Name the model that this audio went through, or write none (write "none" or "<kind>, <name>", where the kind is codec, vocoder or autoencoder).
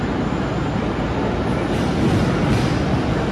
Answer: none